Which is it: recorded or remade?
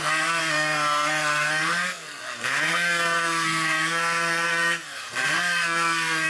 remade